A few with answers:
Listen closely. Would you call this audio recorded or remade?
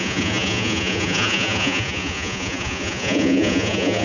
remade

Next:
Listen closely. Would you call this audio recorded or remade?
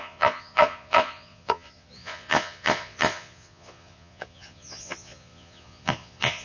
remade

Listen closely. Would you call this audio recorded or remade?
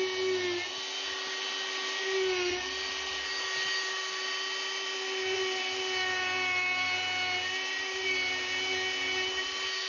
recorded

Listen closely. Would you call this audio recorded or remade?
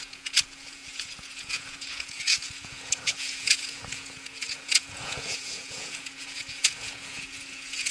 remade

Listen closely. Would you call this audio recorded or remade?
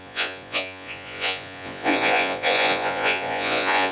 remade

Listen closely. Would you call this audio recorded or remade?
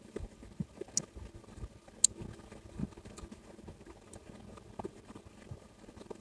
recorded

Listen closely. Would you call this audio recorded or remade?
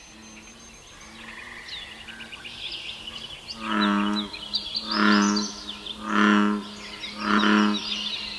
recorded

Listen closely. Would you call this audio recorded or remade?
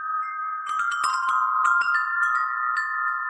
remade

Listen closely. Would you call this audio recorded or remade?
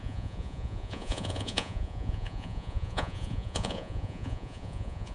remade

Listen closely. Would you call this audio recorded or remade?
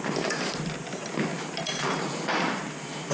recorded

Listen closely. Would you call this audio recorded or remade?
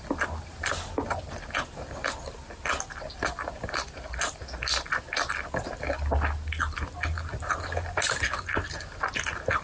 recorded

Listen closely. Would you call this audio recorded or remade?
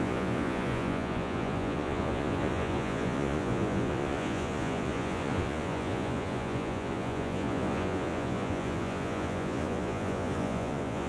remade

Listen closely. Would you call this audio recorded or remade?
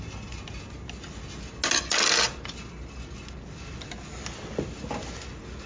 recorded